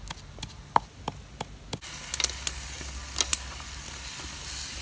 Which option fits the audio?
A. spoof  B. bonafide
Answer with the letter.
B